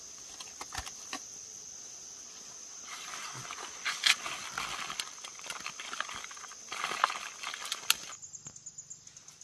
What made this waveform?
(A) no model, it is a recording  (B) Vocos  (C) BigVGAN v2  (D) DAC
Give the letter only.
A